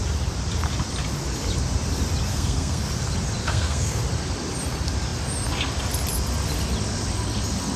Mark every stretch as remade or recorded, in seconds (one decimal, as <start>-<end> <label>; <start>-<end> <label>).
0.0-2.3 recorded; 2.3-2.8 remade; 2.8-3.4 recorded; 3.4-4.0 remade; 4.0-7.8 recorded